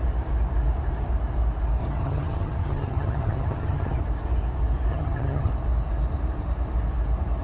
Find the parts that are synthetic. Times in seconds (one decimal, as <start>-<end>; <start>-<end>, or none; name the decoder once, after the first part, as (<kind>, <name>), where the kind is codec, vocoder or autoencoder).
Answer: 1.8-4.0 (vocoder, HiFi-GAN); 4.9-5.5